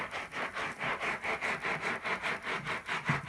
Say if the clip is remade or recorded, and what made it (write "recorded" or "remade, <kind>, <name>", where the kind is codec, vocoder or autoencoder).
recorded